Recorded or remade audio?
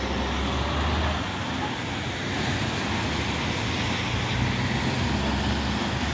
recorded